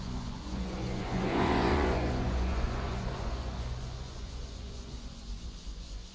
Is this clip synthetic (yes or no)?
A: yes